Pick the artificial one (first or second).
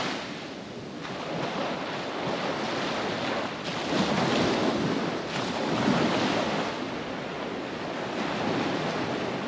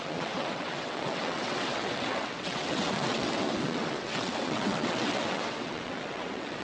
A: second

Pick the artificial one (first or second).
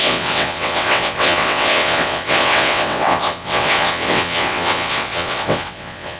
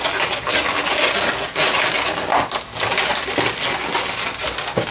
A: first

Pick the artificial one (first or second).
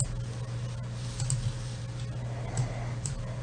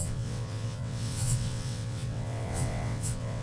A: second